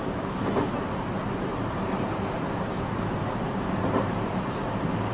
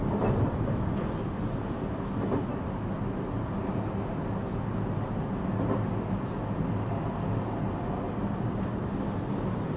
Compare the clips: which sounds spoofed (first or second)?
first